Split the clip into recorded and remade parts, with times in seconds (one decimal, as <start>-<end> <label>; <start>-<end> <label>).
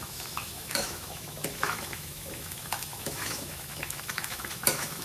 0.0-5.0 remade